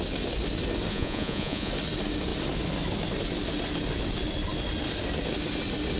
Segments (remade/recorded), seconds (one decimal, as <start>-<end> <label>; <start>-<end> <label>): 0.0-0.9 recorded; 0.9-1.7 remade; 1.7-6.0 recorded